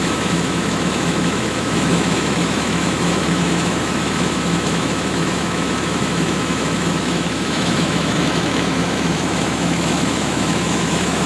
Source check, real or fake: fake